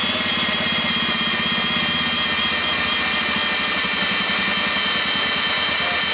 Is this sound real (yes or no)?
yes